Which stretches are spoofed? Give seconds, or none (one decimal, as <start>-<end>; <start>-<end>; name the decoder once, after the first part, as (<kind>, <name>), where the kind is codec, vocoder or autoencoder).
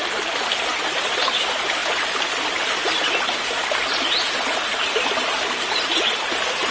0.7-1.2 (vocoder, BigVGAN v2)